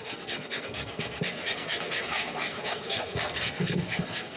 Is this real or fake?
fake